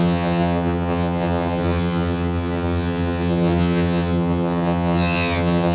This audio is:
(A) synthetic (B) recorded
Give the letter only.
A